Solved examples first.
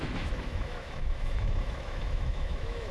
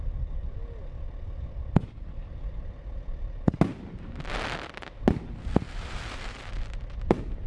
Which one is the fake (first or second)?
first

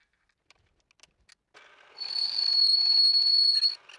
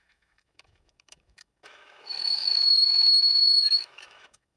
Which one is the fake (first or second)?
second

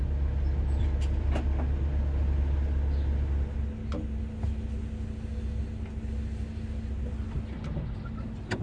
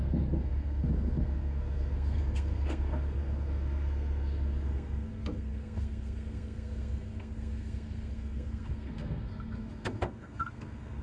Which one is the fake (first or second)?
second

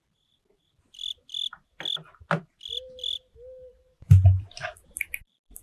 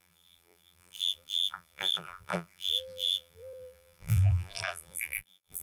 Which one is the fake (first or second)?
second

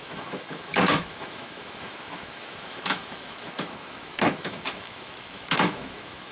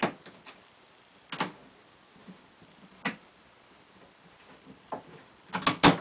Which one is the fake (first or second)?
first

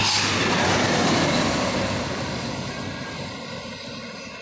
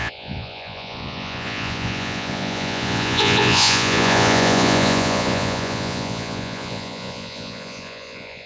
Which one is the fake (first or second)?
second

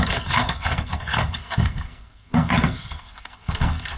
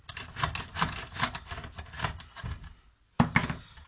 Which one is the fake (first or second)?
first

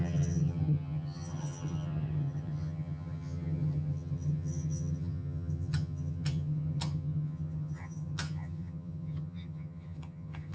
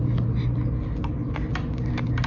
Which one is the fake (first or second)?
first